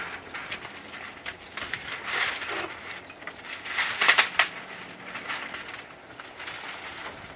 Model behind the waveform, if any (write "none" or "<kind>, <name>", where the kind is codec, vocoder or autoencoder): none